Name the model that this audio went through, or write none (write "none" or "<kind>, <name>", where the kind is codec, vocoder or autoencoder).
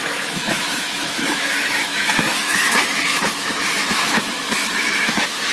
autoencoder, DAC-VAE